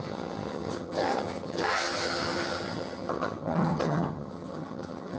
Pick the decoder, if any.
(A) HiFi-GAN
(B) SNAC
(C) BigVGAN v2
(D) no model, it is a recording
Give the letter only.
A